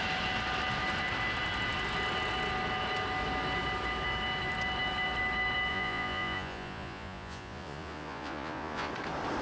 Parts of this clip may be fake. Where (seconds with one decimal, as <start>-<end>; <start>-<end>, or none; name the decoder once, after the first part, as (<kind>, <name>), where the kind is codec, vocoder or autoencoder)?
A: 5.7-8.9 (vocoder, Vocos)